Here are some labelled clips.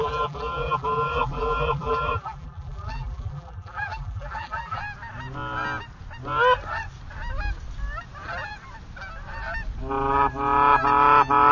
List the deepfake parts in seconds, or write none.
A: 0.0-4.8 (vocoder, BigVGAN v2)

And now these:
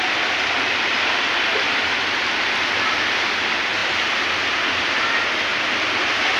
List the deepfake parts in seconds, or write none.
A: 3.8-4.9 (vocoder, BigVGAN v2)

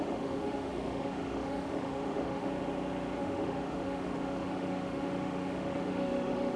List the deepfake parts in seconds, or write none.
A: 0.0-2.5 (autoencoder, DAC-VAE); 3.2-6.6

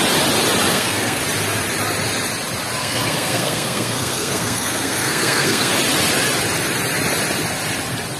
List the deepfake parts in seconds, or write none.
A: 0.7-1.2 (codec, SNAC); 2.8-5.7

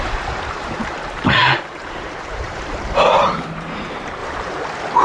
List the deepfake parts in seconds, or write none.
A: 0.0-4.2 (vocoder, BigVGAN v2)

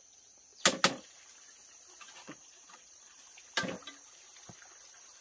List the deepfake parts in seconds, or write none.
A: 2.2-3.2 (vocoder, Vocos)

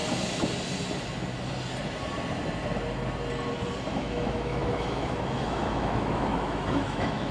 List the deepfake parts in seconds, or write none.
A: 3.9-7.3 (autoencoder, DAC-VAE)